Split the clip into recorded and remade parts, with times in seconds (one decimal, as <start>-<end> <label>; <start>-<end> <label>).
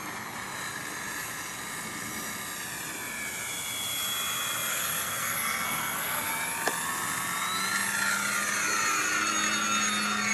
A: 0.0-4.7 recorded; 4.7-6.3 remade; 6.3-10.3 recorded